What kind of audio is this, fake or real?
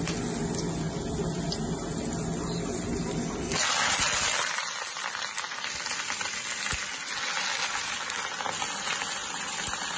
real